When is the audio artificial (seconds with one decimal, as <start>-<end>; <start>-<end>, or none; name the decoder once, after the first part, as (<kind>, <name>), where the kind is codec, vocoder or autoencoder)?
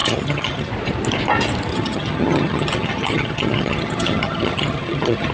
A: 0.0-0.7 (vocoder, HiFi-GAN); 1.7-5.3